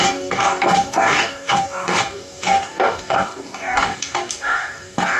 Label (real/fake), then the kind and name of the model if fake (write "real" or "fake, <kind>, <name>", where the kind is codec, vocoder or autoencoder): fake, codec, DAC